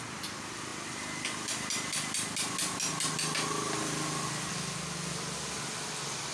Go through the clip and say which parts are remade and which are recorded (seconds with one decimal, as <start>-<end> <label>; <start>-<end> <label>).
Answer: 0.0-6.3 recorded